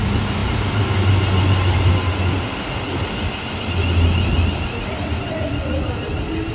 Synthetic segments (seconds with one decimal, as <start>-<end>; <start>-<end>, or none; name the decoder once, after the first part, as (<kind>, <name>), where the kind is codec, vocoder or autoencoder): none